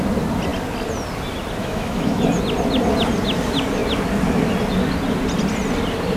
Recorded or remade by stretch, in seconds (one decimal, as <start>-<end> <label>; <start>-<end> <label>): 0.0-1.6 recorded; 1.6-2.2 remade; 2.2-6.2 recorded